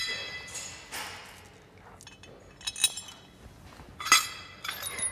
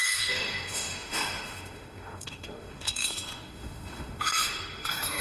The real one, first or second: first